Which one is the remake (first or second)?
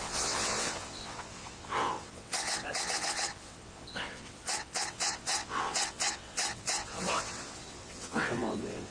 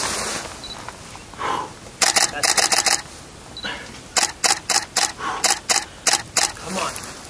first